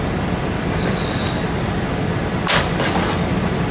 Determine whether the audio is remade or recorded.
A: recorded